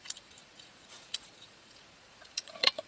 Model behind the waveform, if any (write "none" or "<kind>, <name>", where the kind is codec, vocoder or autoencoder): vocoder, Vocos